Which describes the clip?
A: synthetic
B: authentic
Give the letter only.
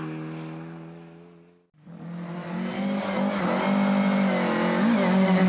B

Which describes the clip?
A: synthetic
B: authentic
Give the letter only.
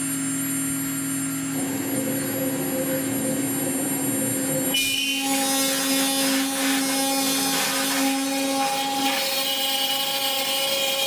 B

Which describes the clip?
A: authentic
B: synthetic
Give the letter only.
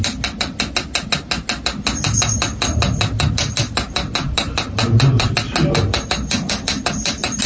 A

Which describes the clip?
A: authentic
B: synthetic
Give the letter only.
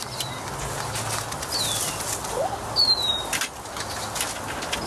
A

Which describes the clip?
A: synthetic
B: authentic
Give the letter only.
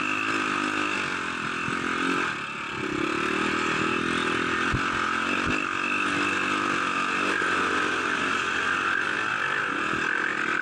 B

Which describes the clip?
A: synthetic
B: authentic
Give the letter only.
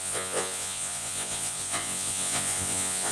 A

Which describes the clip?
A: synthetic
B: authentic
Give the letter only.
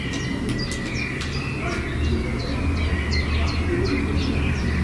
B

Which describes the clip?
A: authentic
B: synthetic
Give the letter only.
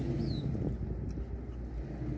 A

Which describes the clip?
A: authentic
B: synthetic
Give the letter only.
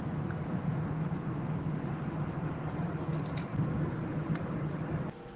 A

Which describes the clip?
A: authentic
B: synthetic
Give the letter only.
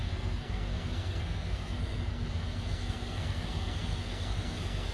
B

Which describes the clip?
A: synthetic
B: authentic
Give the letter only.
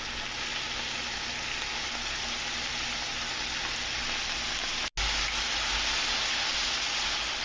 B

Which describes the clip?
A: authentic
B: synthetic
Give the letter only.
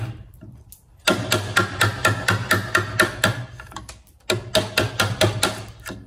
A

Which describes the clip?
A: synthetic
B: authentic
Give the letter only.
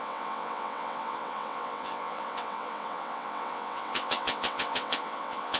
A